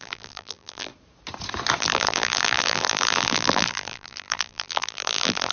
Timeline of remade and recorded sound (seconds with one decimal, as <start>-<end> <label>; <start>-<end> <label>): 0.0-0.9 remade; 0.9-1.8 recorded; 1.8-5.5 remade